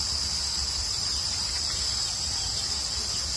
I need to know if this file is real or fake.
real